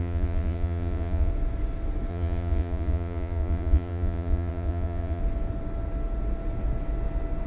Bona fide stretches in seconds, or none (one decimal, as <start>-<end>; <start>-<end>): 1.3-2.1; 5.2-7.5